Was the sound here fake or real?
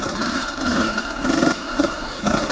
fake